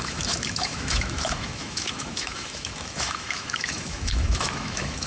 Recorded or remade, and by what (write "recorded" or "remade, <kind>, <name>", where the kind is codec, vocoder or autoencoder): remade, autoencoder, DAC-VAE